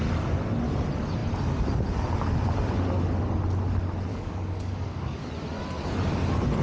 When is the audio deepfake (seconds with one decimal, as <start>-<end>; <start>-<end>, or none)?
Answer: 4.1-5.2